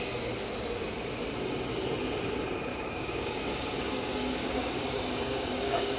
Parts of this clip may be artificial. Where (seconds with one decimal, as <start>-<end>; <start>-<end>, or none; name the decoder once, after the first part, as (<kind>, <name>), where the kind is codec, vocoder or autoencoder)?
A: 2.7-6.0 (codec, DAC)